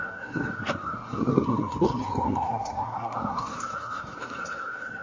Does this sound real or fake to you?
fake